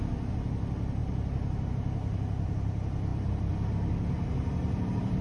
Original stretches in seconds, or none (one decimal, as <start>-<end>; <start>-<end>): 0.0-3.1; 3.7-4.6